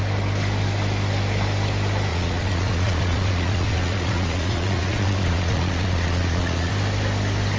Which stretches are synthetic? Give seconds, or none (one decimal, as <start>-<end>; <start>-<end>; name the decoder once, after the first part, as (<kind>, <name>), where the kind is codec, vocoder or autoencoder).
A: 2.1-6.7 (vocoder, Vocos)